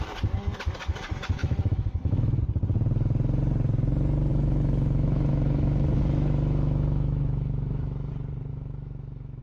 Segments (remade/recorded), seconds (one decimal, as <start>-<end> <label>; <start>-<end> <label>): 0.0-1.4 recorded; 1.4-2.4 remade; 2.4-4.3 recorded; 4.3-8.1 remade; 8.1-8.5 recorded; 8.5-9.4 remade